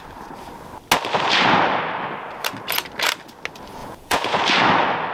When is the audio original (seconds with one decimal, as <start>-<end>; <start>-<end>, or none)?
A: 0.0-3.8; 4.4-5.1